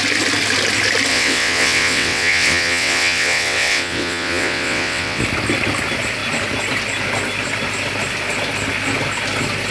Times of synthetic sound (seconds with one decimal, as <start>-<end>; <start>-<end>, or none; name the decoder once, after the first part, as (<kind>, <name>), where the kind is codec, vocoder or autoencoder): 1.1-5.2 (vocoder, WaveNeXt)